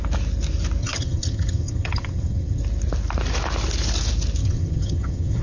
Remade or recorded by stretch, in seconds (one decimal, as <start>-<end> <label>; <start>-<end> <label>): 0.0-0.8 recorded; 0.8-2.6 remade; 2.6-4.4 recorded; 4.4-5.4 remade